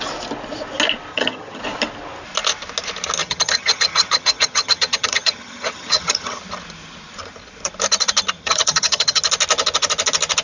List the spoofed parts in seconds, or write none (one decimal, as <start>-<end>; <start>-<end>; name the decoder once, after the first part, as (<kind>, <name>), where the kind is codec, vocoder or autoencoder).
1.1-1.6 (vocoder, HiFi-GAN); 3.2-6.4; 8.4-9.2